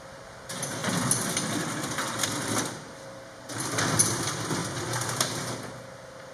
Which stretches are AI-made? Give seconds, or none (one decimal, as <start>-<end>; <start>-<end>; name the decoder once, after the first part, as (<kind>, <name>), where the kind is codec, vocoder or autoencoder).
none